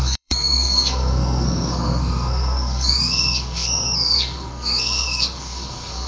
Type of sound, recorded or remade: remade